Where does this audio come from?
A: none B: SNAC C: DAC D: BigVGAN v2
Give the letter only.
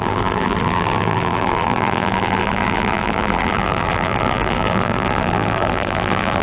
D